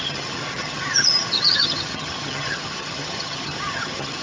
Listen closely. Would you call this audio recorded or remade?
remade